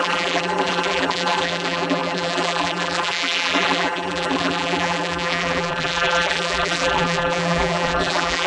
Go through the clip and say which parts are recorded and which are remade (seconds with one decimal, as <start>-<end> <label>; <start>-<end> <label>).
0.0-8.5 remade